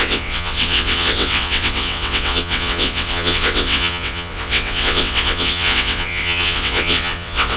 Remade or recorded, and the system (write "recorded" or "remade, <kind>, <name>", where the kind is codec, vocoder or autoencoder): remade, vocoder, WaveNeXt